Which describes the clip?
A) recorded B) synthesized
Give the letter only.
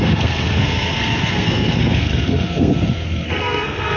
B